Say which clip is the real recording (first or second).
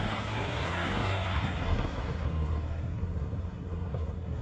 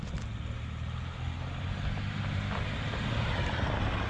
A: second